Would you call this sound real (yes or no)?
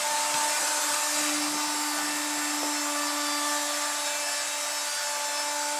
yes